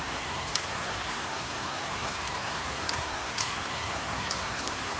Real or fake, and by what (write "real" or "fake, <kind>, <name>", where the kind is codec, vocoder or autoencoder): fake, codec, SNAC